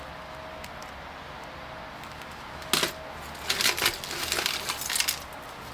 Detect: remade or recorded recorded